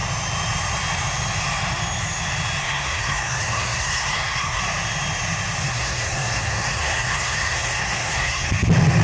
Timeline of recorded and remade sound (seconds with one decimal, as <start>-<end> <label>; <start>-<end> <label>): 0.0-2.6 recorded; 2.6-4.6 remade; 4.6-5.6 recorded; 5.6-8.5 remade; 8.5-9.0 recorded